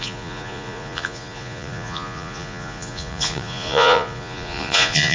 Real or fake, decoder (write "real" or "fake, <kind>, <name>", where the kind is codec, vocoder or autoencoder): fake, vocoder, Vocos